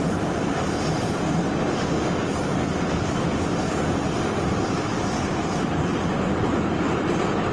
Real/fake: real